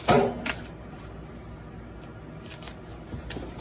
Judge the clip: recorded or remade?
recorded